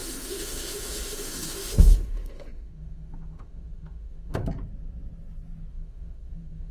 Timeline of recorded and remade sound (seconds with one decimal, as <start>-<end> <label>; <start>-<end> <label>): 0.0-4.4 remade; 4.4-5.7 recorded; 5.7-6.7 remade